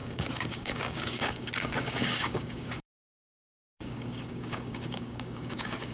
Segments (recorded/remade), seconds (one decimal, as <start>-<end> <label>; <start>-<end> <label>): 0.0-5.9 remade